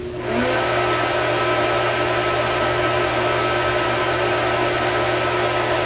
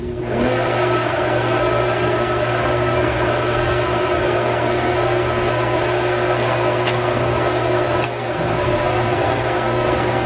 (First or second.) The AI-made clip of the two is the second